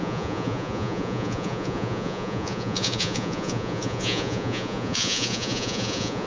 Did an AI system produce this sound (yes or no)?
yes